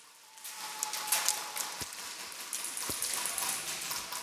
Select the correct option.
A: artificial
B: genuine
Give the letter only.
B